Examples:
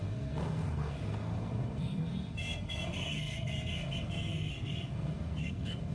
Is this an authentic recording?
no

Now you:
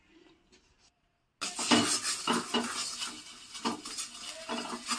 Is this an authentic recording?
yes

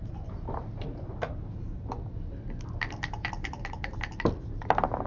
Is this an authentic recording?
yes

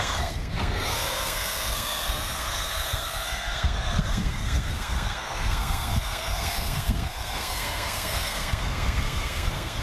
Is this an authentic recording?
no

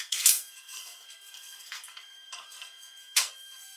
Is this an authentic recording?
no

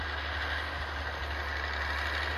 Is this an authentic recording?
yes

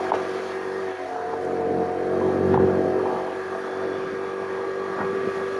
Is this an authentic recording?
yes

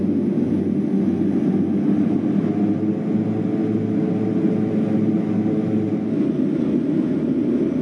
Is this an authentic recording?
yes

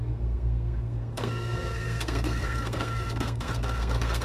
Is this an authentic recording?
no